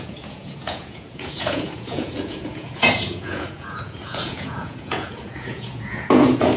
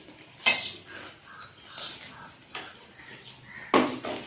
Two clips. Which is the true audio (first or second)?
second